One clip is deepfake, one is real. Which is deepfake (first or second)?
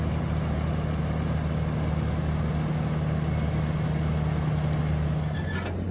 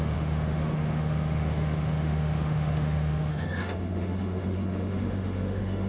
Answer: second